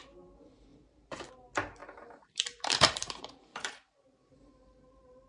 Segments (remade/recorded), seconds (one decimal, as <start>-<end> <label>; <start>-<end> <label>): 0.0-0.7 recorded; 0.7-1.3 remade; 1.3-1.8 recorded; 1.8-5.3 remade